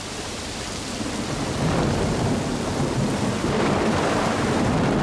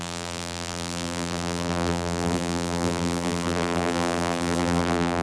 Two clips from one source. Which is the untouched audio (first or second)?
first